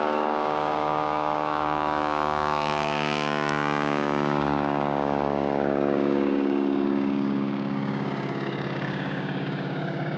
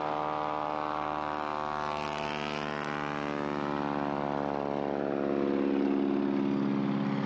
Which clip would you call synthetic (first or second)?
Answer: first